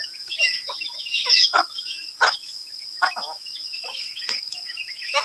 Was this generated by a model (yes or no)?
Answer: yes